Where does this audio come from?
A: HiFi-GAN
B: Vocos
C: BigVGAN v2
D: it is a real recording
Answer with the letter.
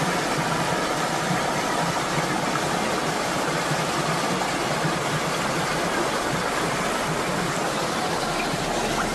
D